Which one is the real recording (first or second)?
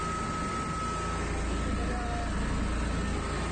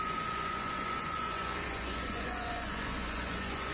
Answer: first